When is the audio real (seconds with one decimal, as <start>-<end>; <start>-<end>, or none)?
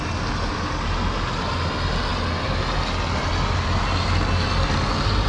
0.0-5.3